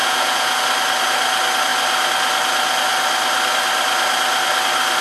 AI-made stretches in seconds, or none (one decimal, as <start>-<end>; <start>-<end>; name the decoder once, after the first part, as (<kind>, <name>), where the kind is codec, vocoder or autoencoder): 0.0-0.6 (vocoder, Vocos)